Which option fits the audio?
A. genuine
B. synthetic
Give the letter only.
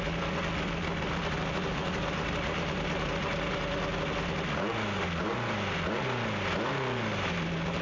A